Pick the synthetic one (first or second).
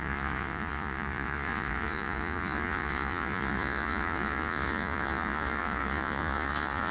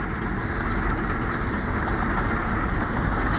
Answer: first